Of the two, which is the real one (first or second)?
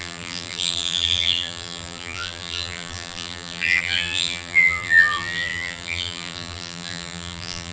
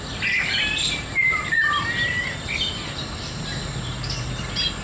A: second